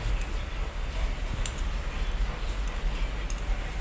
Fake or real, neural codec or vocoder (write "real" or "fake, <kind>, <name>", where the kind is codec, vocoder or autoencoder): real